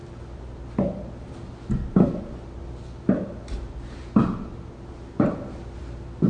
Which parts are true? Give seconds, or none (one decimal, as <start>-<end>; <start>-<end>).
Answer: 0.0-6.3